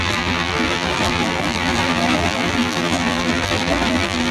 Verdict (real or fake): fake